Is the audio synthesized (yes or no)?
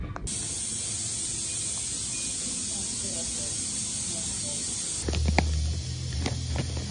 no